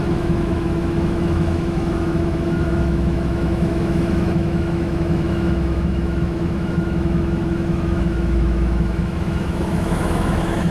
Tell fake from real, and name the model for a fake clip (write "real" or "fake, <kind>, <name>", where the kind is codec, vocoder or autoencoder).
fake, autoencoder, DAC-VAE